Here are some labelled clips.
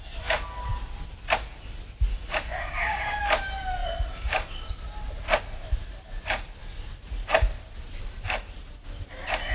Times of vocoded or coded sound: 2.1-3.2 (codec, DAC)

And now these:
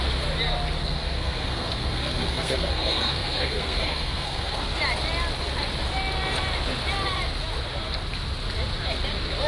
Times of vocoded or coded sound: 0.8-4.6 (codec, SNAC)

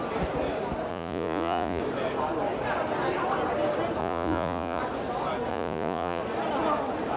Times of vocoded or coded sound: 0.9-1.8 (vocoder, Vocos); 4.0-4.8; 5.5-6.2

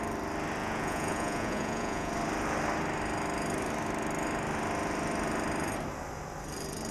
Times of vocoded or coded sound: 0.6-2.1 (vocoder, Vocos)

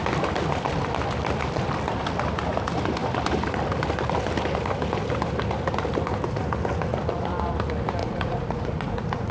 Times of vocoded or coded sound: 8.0-9.3 (vocoder, Vocos)

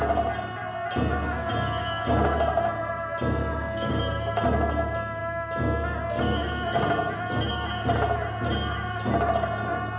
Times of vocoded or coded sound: 3.4-4.0 (codec, DAC)

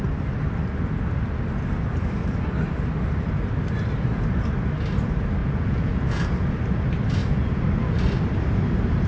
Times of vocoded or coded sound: 5.4-6.5 (vocoder, Vocos); 7.2-7.7

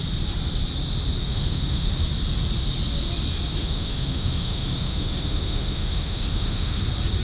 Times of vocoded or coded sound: 1.3-1.9 (autoencoder, DAC-VAE); 3.6-6.8